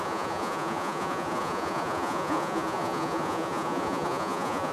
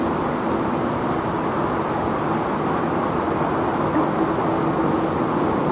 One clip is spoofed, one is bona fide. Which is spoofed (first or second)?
first